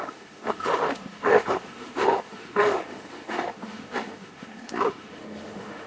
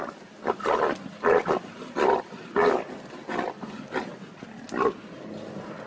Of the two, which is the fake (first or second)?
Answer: first